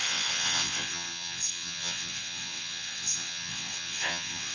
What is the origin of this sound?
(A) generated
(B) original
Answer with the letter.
A